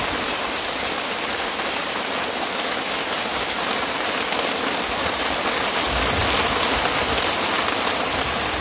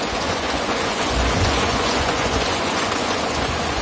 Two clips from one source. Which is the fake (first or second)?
second